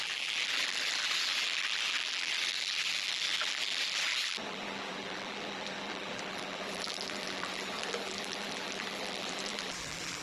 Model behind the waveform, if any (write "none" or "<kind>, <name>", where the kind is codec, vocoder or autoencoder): vocoder, BigVGAN v2